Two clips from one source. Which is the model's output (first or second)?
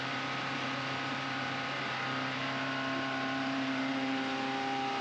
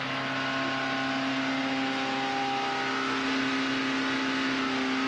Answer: first